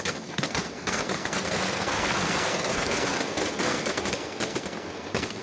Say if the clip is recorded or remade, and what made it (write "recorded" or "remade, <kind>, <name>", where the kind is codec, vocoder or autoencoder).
remade, codec, SNAC